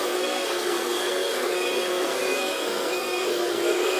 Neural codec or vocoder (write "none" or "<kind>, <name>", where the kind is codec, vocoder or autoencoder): codec, SNAC